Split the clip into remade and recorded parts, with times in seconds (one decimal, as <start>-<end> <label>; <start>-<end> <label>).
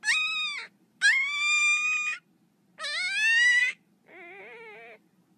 0.0-5.4 recorded